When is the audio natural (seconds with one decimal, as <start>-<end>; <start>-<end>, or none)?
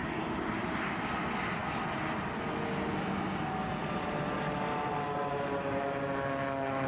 0.0-6.9